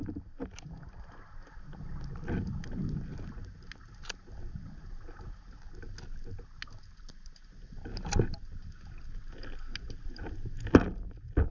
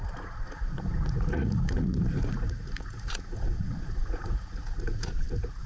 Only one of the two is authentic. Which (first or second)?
first